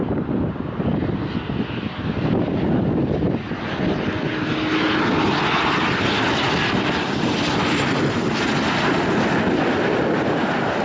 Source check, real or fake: real